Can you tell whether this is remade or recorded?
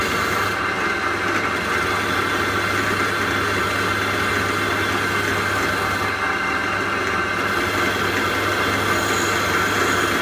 recorded